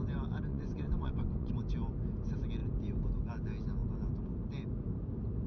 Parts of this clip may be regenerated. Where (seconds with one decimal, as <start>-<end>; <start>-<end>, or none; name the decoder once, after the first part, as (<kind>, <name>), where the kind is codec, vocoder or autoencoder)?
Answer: 0.5-1.5 (vocoder, Vocos)